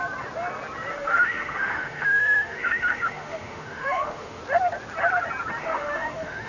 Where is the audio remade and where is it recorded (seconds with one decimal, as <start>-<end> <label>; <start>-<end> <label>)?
0.0-0.9 recorded; 0.9-4.4 remade; 4.4-5.6 recorded; 5.6-6.5 remade